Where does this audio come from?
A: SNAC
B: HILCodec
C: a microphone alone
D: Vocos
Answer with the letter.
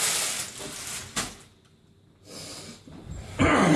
C